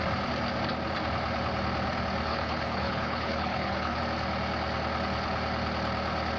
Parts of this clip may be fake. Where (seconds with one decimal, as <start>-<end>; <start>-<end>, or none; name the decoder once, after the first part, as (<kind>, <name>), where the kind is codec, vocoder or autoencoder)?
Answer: 2.3-4.0 (codec, HILCodec)